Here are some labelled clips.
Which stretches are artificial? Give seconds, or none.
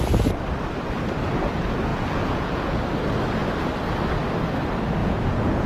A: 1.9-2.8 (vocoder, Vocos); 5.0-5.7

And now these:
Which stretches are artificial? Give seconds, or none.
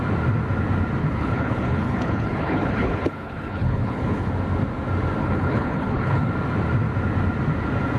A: 1.0-4.3 (codec, HILCodec); 5.2-6.3